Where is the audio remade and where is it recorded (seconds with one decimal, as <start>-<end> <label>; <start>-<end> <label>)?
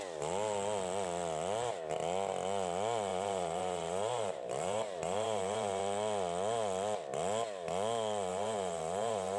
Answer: 0.0-3.1 recorded; 3.1-5.8 remade; 5.8-8.3 recorded; 8.3-9.4 remade